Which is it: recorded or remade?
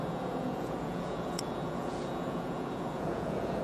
remade